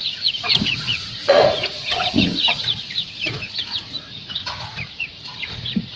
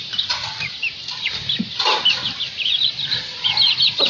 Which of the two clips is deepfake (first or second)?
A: first